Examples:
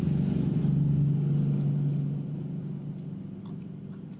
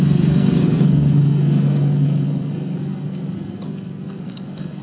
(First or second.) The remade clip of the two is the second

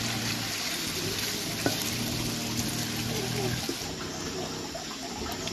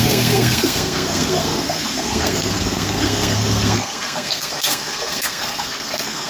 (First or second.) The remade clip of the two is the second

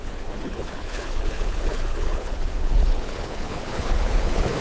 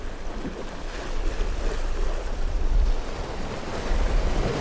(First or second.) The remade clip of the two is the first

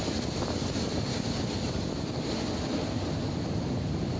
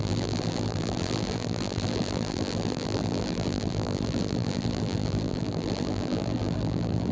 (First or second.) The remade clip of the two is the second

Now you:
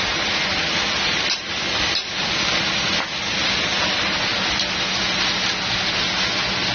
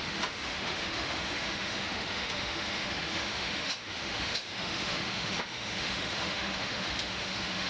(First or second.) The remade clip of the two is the second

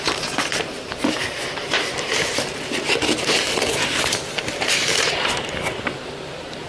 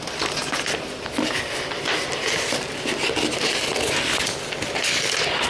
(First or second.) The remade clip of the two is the first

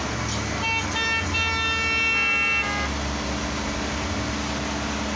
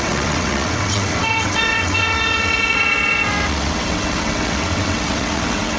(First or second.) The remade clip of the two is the second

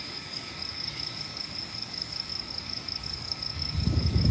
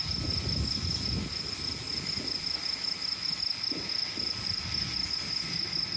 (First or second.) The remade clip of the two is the first